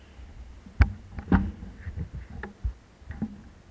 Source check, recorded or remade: recorded